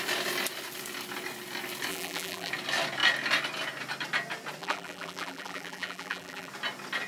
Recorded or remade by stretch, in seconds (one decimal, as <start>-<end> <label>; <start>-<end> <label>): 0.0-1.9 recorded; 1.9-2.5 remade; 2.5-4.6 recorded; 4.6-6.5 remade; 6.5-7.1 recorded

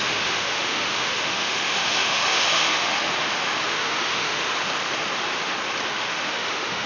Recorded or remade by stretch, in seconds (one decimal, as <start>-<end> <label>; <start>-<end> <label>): 0.0-4.5 remade; 4.5-5.9 recorded; 5.9-6.9 remade

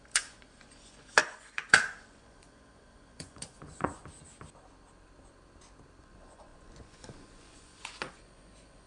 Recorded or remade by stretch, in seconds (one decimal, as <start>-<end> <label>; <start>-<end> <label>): 0.0-4.0 remade; 4.0-6.0 recorded; 6.0-8.9 remade

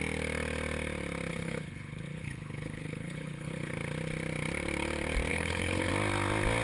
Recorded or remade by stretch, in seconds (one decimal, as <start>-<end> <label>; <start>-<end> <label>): 0.0-1.3 recorded; 1.3-3.7 remade; 3.7-5.3 recorded; 5.3-5.9 remade; 5.9-6.6 recorded

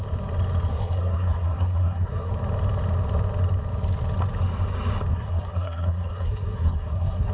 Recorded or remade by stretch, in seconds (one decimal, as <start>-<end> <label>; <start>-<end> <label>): 0.0-0.7 recorded; 0.7-2.3 remade; 2.3-5.1 recorded; 5.1-7.3 remade